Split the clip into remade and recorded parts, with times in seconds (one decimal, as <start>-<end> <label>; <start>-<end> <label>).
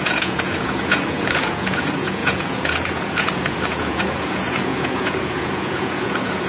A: 0.0-6.5 remade